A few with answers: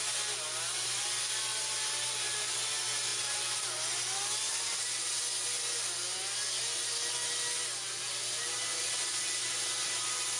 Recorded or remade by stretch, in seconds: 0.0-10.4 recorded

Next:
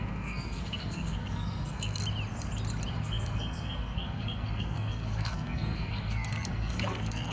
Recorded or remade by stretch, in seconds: 0.0-2.0 remade; 2.0-2.9 recorded; 2.9-7.3 remade

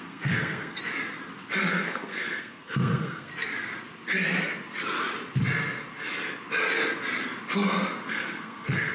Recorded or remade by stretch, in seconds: 0.0-0.8 remade; 0.8-1.7 recorded; 1.7-3.3 remade; 3.3-8.1 recorded; 8.1-8.9 remade